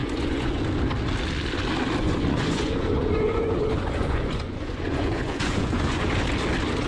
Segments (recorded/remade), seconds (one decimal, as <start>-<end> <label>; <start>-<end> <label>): 0.0-0.6 remade; 0.6-2.0 recorded; 2.0-6.1 remade; 6.1-6.9 recorded